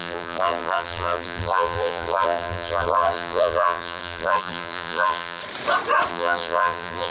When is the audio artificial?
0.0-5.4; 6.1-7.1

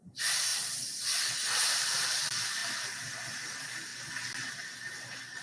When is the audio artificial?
0.0-0.5; 1.3-2.6; 3.3-3.9; 4.5-5.4

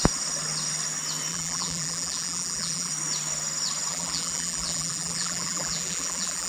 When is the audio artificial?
1.3-2.9; 3.9-6.5

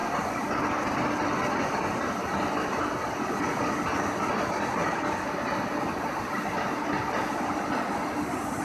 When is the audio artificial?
4.8-5.5